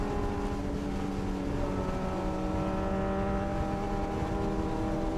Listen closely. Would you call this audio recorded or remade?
recorded